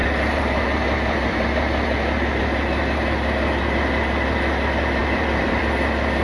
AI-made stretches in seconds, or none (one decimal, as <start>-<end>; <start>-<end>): 0.0-2.4; 5.0-5.6